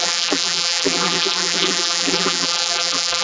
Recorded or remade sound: remade